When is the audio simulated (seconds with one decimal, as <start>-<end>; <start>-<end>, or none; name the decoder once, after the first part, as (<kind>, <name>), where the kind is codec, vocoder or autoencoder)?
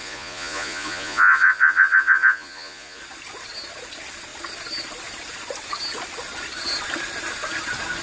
0.0-3.0 (vocoder, Vocos)